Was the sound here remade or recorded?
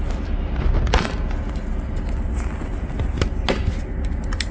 recorded